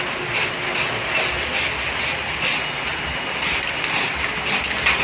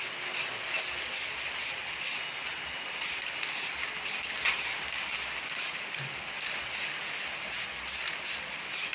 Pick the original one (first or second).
first